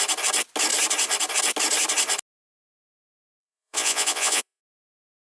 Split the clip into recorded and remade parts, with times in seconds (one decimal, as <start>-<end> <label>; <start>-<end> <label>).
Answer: 0.0-3.4 recorded; 3.4-4.6 remade; 4.6-5.3 recorded